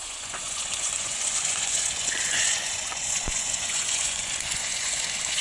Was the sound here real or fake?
fake